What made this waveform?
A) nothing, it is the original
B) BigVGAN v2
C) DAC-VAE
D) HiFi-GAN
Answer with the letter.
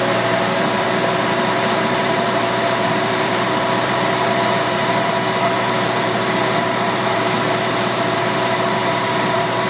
B